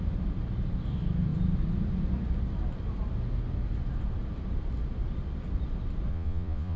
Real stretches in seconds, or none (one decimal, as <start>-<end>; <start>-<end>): 0.0-6.1